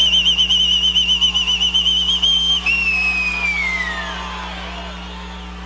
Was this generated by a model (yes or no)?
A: no